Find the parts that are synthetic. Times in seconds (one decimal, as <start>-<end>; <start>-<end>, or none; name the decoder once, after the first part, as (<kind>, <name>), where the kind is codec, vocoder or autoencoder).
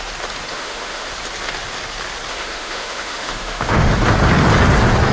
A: 0.5-1.1 (autoencoder, DAC-VAE); 2.3-3.9